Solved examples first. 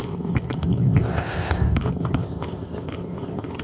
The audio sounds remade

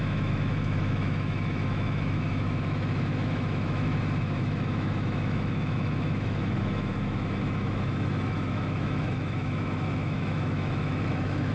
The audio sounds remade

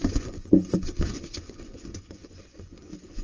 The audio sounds remade